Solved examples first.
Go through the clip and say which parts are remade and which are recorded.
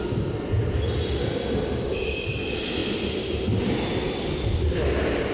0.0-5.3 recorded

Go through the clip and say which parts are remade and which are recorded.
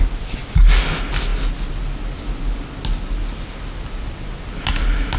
0.0-5.2 recorded